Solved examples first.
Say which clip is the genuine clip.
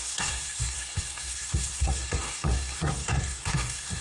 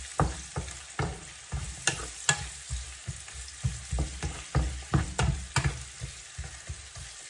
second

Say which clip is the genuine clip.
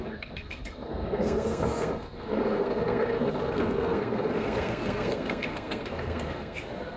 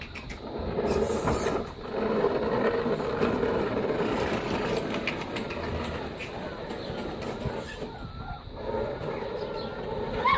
second